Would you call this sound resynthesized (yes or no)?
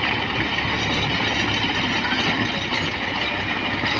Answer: no